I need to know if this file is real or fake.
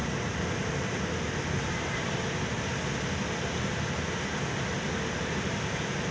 real